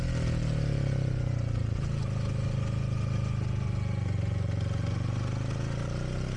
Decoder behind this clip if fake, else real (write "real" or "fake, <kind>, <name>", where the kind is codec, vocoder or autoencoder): real